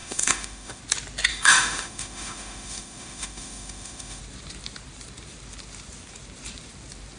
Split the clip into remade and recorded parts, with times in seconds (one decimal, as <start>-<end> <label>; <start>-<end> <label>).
0.0-0.8 remade; 0.8-1.3 recorded; 1.3-4.2 remade; 4.2-7.2 recorded